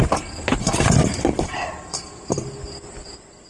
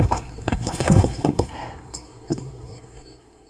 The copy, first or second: second